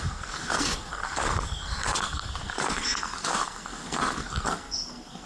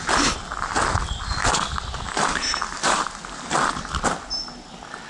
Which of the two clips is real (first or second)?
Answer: second